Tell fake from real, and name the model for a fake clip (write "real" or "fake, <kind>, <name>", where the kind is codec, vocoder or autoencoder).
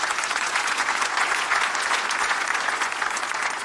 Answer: fake, vocoder, Vocos